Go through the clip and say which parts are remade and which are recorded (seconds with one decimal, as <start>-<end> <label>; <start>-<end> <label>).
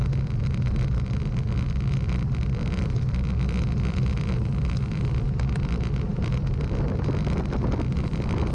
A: 0.0-8.5 remade